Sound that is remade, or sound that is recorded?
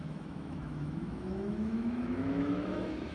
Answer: remade